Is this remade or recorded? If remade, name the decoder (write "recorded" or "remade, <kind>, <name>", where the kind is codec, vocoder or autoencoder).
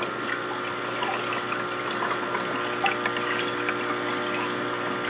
recorded